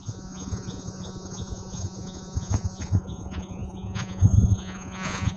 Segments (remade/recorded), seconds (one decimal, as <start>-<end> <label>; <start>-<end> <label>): 0.0-5.4 remade